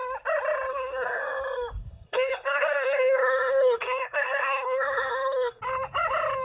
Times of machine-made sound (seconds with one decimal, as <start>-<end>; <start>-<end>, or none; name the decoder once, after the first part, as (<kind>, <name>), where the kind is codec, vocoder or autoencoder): 0.7-1.2 (codec, SNAC); 1.8-5.6